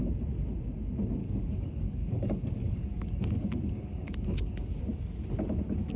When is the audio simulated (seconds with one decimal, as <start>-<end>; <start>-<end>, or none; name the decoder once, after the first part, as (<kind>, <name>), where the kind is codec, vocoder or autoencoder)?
1.2-4.8 (codec, DAC)